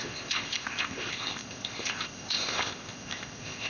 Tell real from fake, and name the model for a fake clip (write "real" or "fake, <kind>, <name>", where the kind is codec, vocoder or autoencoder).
fake, codec, ZipCodec